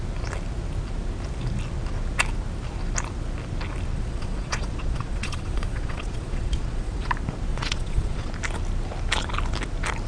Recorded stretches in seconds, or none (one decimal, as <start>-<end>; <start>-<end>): 0.0-3.9; 7.1-7.5; 8.3-10.1